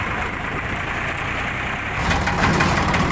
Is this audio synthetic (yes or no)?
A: no